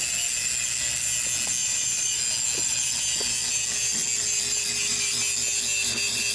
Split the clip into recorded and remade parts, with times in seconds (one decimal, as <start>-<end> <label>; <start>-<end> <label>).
0.0-1.6 recorded; 1.6-2.2 remade; 2.2-6.3 recorded